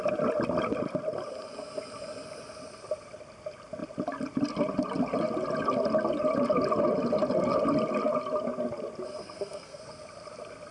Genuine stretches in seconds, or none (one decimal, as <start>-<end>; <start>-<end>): 0.0-9.2; 9.8-10.7